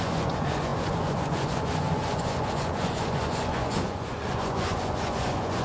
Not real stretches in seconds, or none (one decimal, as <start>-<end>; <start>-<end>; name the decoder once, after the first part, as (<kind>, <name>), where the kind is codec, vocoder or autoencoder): 0.0-5.6 (vocoder, Vocos)